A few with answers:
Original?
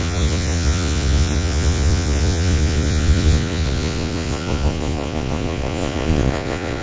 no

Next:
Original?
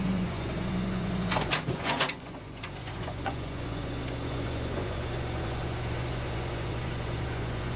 no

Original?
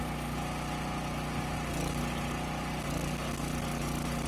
yes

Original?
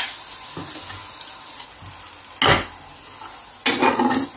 yes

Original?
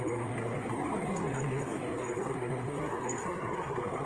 no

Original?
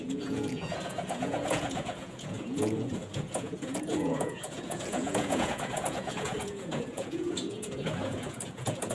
no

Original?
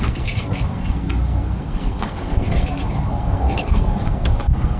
no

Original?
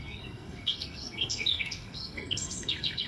no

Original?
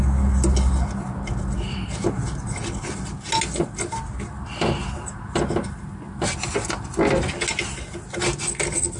yes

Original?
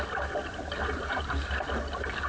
yes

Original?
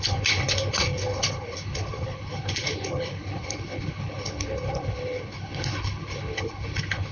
no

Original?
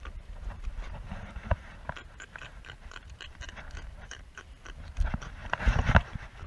no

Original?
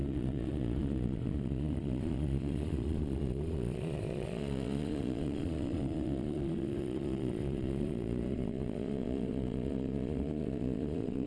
no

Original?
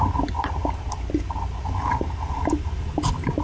yes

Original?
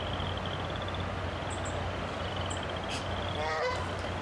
yes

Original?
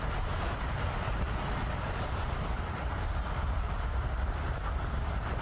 no